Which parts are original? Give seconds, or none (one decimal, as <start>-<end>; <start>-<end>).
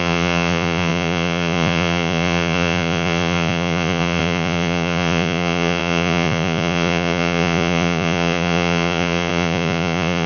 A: none